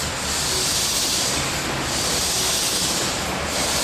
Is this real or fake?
real